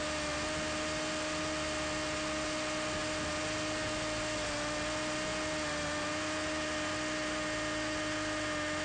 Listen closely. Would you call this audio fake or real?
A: real